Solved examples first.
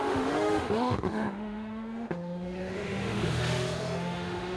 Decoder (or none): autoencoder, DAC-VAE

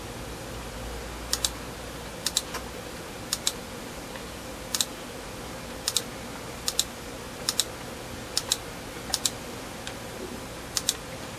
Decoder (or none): none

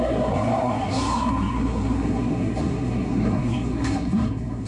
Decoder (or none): codec, SNAC